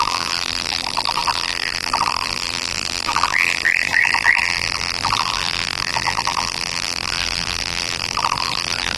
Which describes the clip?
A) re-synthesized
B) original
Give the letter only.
A